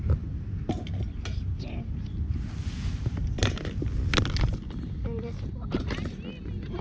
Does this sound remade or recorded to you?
recorded